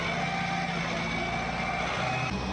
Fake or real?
real